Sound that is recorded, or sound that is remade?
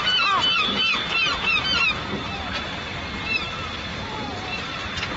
recorded